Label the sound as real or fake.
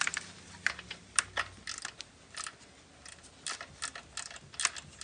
real